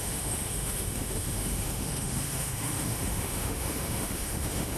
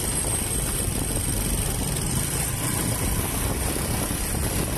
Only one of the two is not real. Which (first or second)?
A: first